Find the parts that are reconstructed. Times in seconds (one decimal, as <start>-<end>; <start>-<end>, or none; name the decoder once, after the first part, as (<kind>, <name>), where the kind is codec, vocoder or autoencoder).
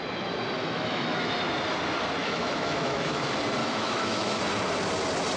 0.6-1.3 (autoencoder, DAC-VAE); 2.2-3.2; 3.6-4.4